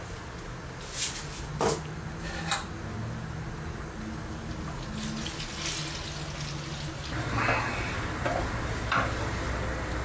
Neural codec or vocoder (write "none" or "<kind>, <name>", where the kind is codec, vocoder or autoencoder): none